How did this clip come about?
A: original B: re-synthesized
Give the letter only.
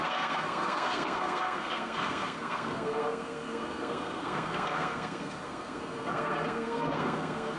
B